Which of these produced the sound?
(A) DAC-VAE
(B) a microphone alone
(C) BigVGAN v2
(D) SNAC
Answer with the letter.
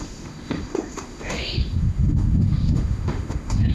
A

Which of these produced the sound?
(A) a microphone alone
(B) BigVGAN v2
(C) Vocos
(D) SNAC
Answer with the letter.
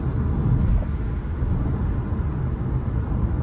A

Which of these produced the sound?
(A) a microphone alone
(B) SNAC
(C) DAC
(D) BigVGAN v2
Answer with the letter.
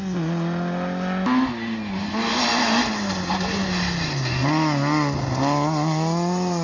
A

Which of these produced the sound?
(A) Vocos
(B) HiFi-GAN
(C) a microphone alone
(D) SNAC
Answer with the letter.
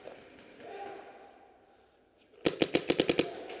C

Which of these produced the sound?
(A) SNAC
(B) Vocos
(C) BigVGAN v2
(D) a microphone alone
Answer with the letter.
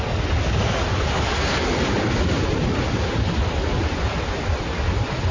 D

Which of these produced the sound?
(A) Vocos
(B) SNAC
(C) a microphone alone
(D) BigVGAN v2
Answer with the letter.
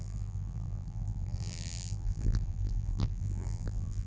D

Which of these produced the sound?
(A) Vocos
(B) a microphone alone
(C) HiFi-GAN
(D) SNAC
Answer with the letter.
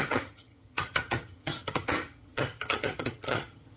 C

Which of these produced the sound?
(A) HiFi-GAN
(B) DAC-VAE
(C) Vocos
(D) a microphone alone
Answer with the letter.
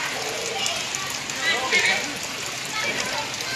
D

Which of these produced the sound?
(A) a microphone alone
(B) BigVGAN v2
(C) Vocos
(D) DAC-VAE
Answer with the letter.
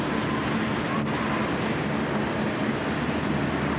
A